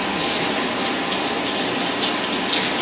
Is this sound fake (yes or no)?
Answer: no